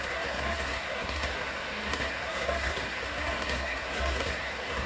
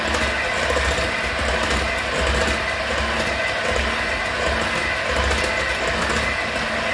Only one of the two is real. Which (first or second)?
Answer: second